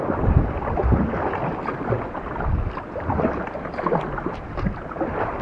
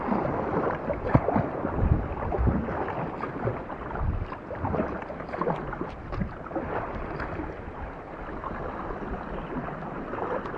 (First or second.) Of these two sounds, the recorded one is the first